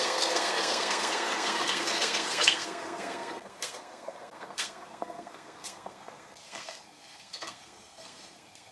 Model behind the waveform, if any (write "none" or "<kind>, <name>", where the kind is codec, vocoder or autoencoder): codec, SNAC